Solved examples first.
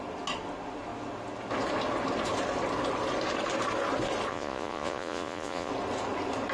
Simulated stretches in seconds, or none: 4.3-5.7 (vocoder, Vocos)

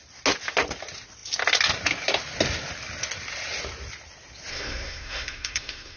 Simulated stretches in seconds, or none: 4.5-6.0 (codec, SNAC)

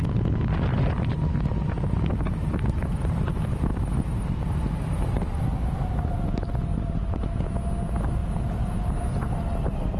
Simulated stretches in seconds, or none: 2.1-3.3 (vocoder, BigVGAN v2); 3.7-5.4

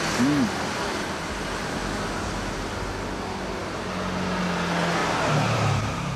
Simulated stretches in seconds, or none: 0.9-1.8 (vocoder, BigVGAN v2); 5.0-6.2